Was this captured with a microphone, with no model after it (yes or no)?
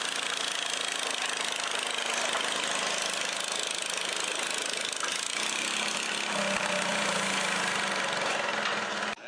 yes